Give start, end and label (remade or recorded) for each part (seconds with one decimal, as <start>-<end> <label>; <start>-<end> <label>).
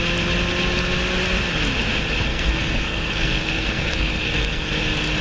0.0-2.3 recorded; 2.3-4.7 remade; 4.7-5.2 recorded